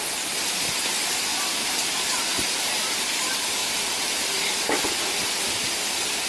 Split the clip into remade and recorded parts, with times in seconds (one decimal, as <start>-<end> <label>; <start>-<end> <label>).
0.0-1.3 recorded; 1.3-2.0 remade; 2.0-3.6 recorded; 3.6-4.9 remade; 4.9-6.3 recorded